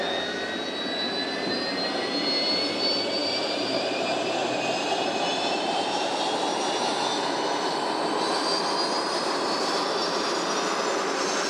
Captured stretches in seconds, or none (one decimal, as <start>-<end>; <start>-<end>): 0.0-3.2; 6.3-11.5